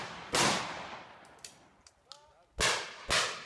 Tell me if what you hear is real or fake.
real